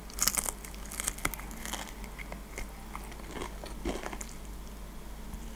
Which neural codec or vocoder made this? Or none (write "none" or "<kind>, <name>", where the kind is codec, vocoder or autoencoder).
none